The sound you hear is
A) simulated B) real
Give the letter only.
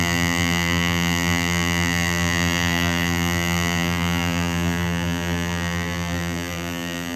A